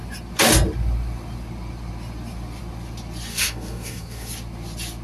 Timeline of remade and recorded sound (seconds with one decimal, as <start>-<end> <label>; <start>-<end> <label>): 0.0-3.3 recorded; 3.3-4.3 remade; 4.3-5.0 recorded